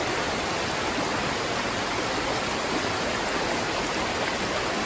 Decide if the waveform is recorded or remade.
recorded